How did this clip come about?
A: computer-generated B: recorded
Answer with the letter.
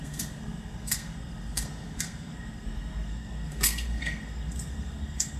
A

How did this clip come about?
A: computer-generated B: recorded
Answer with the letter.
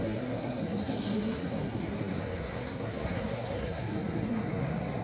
A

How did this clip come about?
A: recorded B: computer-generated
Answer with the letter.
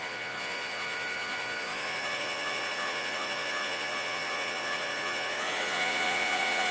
B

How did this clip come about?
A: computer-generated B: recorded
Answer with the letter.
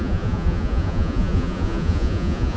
A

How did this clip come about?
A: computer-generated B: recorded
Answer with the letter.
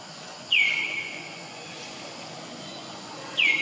A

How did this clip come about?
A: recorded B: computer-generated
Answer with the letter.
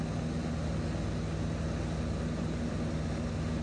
A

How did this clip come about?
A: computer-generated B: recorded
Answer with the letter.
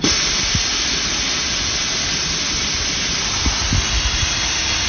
B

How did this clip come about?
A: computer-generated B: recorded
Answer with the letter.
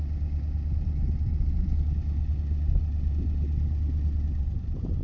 B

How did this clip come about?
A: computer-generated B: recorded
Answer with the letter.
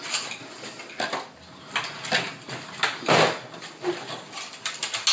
B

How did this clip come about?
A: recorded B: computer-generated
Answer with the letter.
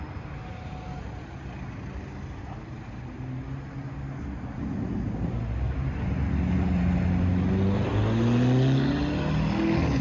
A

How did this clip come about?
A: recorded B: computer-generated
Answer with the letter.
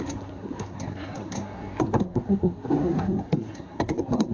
B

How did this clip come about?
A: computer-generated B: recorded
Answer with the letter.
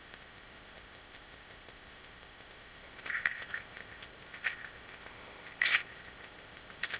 A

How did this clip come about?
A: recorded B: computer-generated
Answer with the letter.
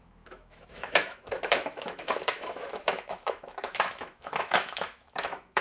B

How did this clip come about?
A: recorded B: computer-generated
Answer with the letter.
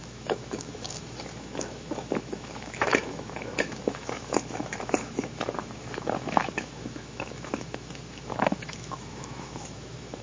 B